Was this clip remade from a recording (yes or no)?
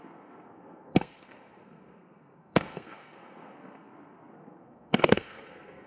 yes